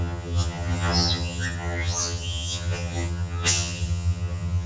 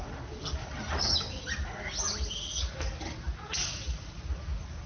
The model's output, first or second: first